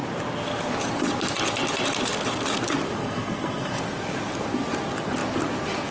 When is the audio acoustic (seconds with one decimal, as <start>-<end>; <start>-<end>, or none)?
0.0-3.0; 3.8-5.9